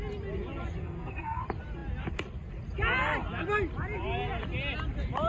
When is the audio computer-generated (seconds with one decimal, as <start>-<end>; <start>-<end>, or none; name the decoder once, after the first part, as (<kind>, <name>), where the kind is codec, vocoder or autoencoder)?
0.8-1.4 (codec, SNAC)